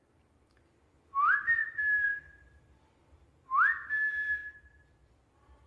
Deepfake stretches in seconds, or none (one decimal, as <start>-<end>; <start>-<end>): none